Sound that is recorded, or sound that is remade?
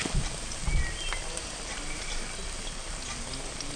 recorded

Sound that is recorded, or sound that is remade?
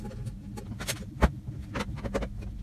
recorded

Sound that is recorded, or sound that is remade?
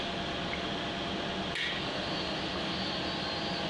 recorded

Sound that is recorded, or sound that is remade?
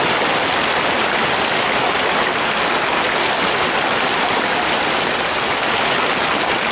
recorded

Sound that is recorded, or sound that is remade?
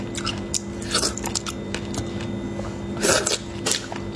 recorded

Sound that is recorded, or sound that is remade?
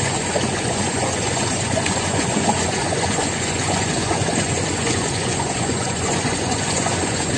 remade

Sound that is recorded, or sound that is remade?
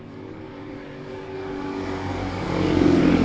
remade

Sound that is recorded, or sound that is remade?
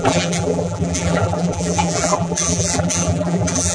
remade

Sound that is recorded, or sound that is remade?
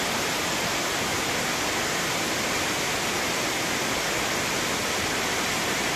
recorded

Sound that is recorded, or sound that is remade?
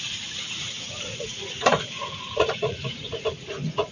remade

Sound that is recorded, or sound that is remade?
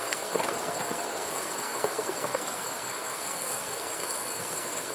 remade